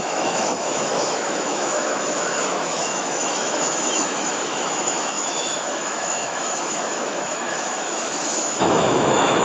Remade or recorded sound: remade